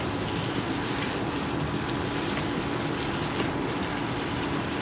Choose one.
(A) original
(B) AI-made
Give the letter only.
A